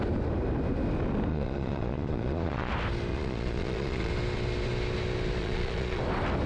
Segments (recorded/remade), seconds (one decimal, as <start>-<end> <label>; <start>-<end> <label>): 0.0-1.3 recorded; 1.3-2.7 remade; 2.7-3.1 recorded; 3.1-4.1 remade; 4.1-5.4 recorded; 5.4-6.0 remade; 6.0-6.5 recorded